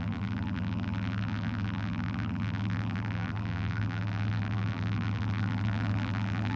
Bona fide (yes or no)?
no